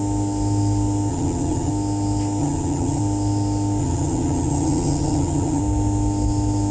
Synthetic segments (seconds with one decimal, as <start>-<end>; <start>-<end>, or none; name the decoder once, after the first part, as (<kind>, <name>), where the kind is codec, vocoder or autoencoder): 1.1-1.7 (vocoder, HiFi-GAN); 2.4-3.0; 3.8-5.6